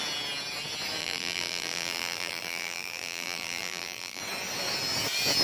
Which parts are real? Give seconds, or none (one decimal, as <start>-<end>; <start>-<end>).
0.0-1.0; 4.2-5.4